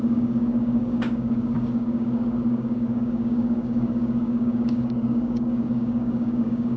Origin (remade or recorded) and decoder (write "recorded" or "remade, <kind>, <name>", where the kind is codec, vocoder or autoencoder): remade, codec, DAC